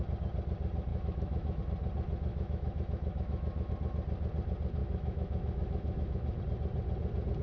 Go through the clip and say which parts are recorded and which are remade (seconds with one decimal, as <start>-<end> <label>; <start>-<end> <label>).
0.0-0.9 recorded; 0.9-1.6 remade; 1.6-2.3 recorded; 2.3-3.7 remade; 3.7-4.8 recorded; 4.8-6.4 remade; 6.4-7.4 recorded